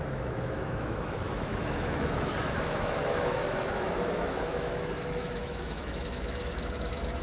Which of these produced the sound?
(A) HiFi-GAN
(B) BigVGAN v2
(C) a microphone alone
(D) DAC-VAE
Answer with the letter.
D